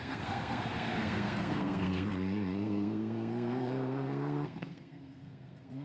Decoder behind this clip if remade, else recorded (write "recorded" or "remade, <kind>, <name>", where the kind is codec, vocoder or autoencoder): remade, codec, SNAC